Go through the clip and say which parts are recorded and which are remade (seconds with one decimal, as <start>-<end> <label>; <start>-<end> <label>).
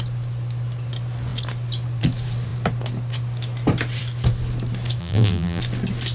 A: 0.0-5.0 recorded; 5.0-5.6 remade; 5.6-6.1 recorded